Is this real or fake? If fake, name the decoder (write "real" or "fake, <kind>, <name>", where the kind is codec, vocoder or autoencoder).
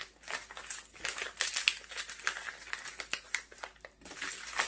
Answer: real